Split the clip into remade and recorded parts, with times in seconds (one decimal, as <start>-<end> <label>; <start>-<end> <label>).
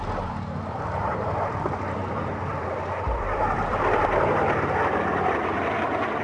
0.0-6.2 remade